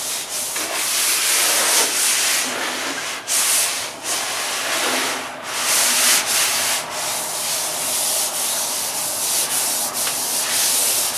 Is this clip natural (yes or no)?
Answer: yes